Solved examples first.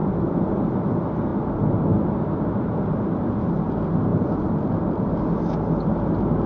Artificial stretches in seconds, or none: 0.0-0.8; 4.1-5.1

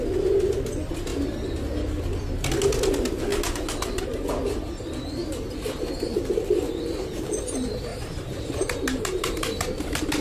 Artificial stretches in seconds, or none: 7.9-10.2

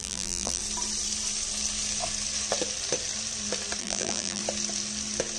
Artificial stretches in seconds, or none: 0.0-0.6; 3.8-4.4

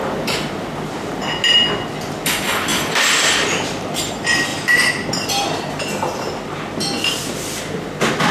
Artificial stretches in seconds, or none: 2.7-4.0; 4.5-7.6

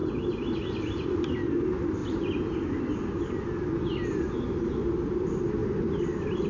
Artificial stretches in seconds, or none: none

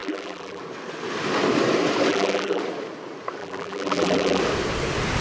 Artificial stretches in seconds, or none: 0.0-0.6; 2.1-2.6; 3.4-4.4

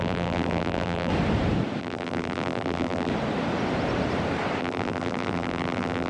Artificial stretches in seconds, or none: 0.0-1.1; 1.8-3.1; 4.6-6.1